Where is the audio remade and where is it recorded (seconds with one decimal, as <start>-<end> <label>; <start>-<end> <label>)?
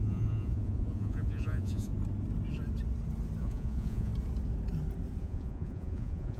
0.0-1.9 remade; 1.9-3.4 recorded; 3.4-4.1 remade; 4.1-5.2 recorded; 5.2-6.4 remade